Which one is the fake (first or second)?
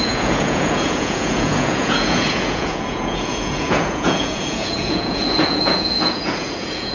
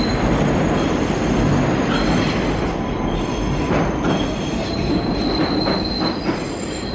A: first